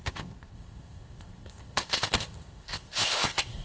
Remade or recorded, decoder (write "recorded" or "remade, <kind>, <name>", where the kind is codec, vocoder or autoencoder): remade, codec, ZipCodec